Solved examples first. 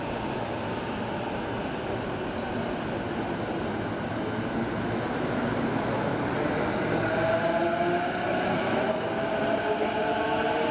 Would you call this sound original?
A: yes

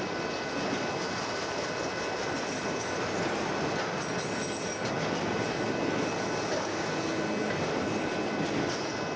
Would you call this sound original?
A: yes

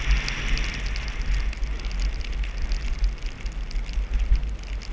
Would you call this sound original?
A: yes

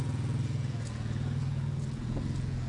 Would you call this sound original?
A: no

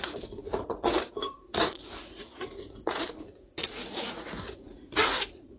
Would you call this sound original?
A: no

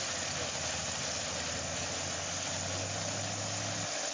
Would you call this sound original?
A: yes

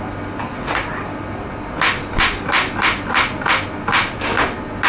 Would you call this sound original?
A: yes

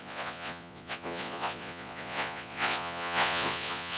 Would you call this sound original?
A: no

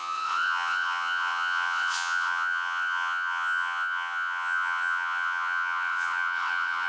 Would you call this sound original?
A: no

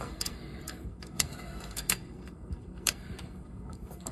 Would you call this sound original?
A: no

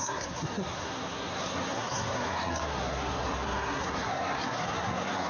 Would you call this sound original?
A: no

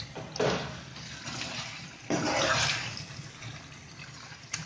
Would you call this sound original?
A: yes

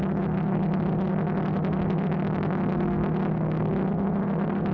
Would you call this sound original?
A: no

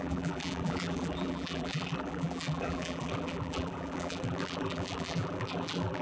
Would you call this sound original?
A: no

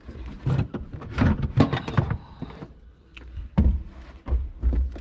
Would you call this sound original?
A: yes